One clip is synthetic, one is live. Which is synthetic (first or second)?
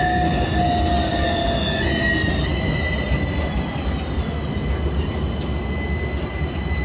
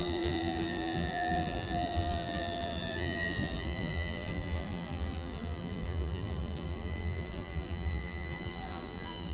second